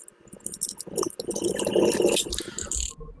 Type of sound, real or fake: real